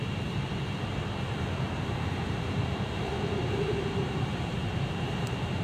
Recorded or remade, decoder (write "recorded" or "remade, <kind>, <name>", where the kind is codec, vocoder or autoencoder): remade, vocoder, BigVGAN v2